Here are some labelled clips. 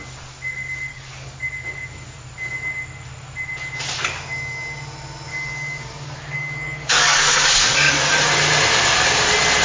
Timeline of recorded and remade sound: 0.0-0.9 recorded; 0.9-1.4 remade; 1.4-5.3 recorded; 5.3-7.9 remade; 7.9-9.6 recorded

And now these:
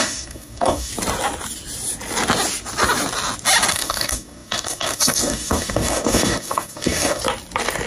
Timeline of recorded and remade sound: 0.0-0.9 remade; 0.9-3.7 recorded; 3.7-7.2 remade; 7.2-7.9 recorded